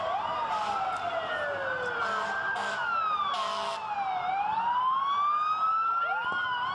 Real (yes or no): yes